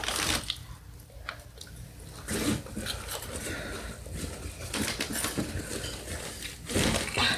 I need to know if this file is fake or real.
real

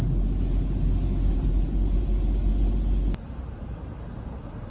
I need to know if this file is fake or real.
real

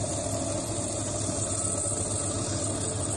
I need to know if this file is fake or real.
real